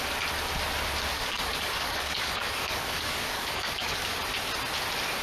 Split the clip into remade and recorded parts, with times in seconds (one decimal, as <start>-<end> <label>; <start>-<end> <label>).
0.0-1.1 recorded; 1.1-4.2 remade; 4.2-5.2 recorded